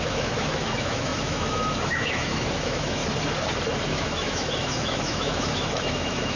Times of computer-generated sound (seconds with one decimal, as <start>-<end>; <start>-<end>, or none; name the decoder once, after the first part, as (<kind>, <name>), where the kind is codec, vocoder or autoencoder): 0.0-3.0 (autoencoder, DAC-VAE); 3.9-6.4